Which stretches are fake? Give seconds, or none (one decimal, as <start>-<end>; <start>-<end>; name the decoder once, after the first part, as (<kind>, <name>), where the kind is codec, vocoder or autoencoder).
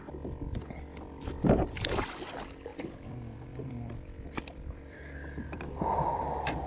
2.7-6.7 (vocoder, BigVGAN v2)